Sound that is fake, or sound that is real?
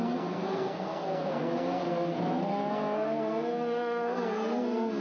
fake